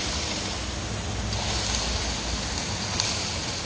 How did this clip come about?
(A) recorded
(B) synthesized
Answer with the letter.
A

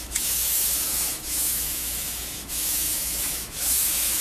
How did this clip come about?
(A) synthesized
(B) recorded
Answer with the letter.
A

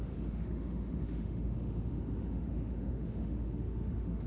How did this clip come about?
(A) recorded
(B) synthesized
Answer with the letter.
B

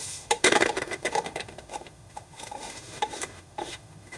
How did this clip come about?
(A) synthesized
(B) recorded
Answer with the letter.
A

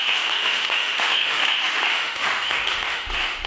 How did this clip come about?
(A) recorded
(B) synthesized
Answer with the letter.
B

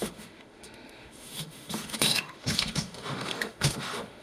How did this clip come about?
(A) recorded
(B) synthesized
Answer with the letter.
B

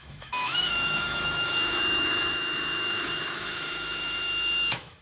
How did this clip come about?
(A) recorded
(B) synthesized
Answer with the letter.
B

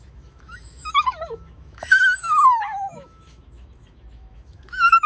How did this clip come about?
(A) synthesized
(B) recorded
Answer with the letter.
A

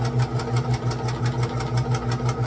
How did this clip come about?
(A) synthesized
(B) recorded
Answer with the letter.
B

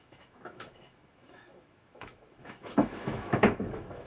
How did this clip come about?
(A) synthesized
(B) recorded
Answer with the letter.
A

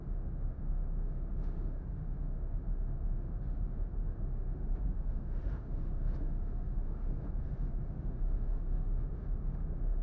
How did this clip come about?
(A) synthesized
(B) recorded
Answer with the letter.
A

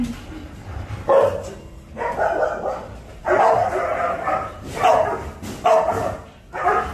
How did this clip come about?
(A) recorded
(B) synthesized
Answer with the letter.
A